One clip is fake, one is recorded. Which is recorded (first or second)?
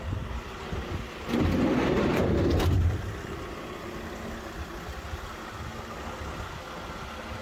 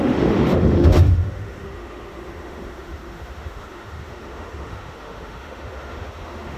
first